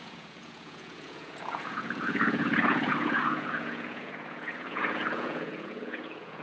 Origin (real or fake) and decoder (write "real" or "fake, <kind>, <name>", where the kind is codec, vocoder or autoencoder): fake, vocoder, Vocos